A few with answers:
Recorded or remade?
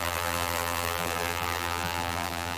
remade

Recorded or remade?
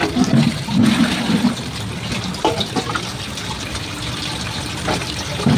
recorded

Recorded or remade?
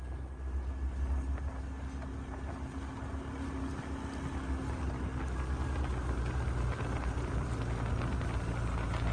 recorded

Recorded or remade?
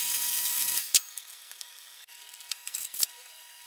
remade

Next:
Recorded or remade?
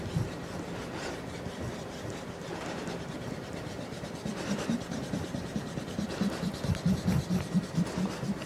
recorded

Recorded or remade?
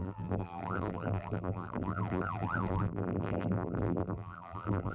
remade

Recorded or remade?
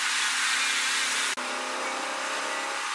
recorded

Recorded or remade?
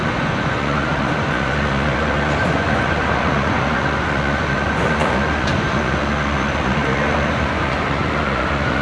remade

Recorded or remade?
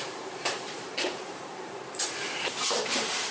remade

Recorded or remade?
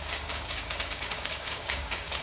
remade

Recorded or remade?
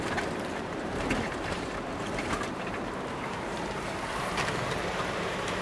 remade